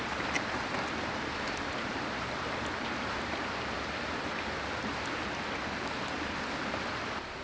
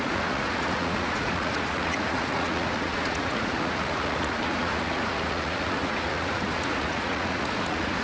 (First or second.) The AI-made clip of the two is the second